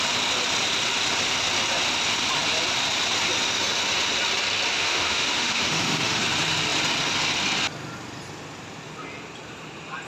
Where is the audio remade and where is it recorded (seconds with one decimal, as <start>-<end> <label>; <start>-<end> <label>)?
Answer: 0.0-4.7 recorded; 4.7-6.2 remade; 6.2-10.1 recorded